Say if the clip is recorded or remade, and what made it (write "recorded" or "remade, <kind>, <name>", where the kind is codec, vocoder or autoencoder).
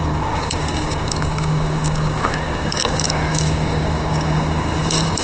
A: remade, codec, DAC